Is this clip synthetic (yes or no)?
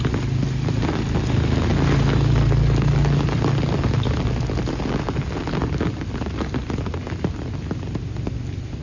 no